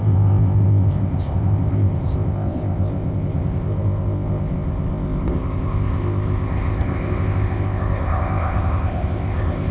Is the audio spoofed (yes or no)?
yes